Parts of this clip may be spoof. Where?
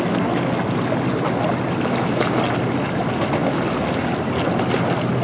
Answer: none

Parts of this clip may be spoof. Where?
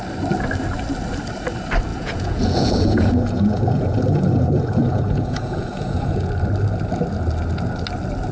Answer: 1.9-6.3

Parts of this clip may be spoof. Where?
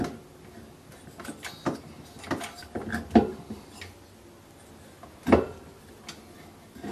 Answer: none